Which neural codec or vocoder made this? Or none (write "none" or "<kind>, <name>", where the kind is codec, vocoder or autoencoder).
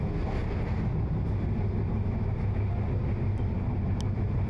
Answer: none